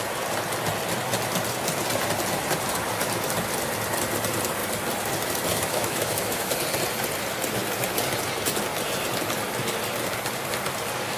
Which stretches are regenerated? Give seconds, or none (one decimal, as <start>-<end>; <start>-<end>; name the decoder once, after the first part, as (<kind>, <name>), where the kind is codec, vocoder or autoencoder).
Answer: 5.5-6.5 (autoencoder, DAC-VAE)